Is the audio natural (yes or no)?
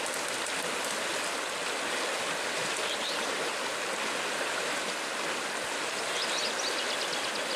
yes